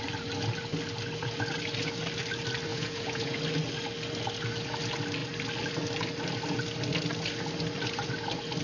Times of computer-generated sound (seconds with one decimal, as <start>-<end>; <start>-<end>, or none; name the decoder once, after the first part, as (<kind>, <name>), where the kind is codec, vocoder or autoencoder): 2.7-3.4 (vocoder, Vocos)